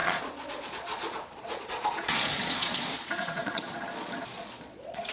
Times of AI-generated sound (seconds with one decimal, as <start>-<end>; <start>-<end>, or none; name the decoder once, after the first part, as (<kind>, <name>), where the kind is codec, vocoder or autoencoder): 0.0-5.1 (vocoder, Vocos)